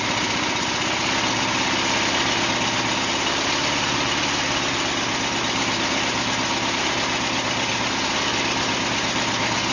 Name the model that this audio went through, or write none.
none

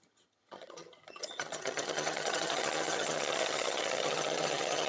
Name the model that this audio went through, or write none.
vocoder, HiFi-GAN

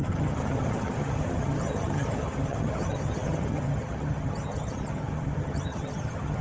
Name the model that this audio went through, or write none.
vocoder, HiFi-GAN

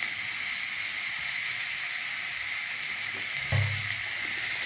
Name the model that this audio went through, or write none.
none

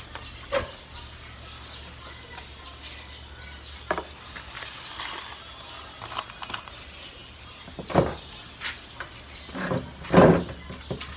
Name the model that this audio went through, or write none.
none